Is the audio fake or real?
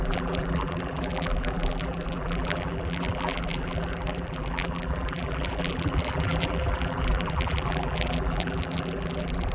fake